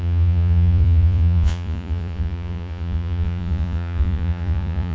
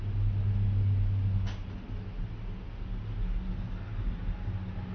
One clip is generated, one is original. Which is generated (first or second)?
first